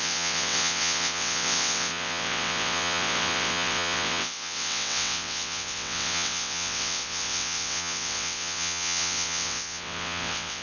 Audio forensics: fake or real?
fake